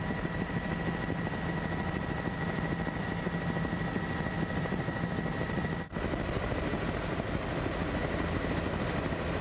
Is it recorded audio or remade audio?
recorded